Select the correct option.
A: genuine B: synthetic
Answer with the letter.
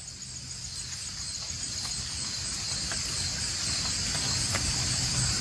A